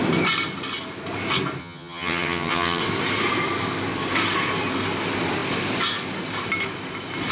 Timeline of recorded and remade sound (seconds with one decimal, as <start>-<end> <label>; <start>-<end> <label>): 0.0-1.6 recorded; 1.6-2.8 remade; 2.8-7.3 recorded